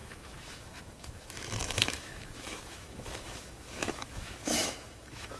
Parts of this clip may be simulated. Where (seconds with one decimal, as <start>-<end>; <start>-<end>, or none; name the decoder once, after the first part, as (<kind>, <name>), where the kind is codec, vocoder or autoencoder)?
0.0-5.4 (autoencoder, DAC-VAE)